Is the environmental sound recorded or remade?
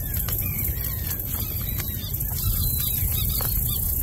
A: recorded